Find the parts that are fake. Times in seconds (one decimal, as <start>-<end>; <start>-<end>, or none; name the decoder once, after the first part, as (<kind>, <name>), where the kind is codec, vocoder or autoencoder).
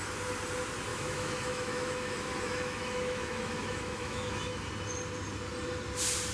0.9-4.7 (autoencoder, DAC-VAE)